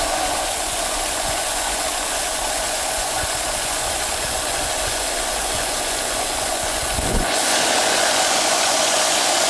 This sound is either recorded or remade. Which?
remade